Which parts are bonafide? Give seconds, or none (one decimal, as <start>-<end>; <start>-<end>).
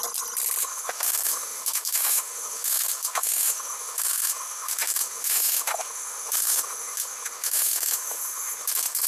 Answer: 0.0-0.6